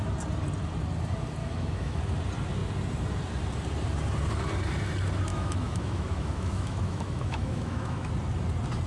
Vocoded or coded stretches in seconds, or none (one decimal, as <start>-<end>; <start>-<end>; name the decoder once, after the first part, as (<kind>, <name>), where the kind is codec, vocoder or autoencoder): 1.4-2.0 (autoencoder, DAC-VAE); 5.3-8.1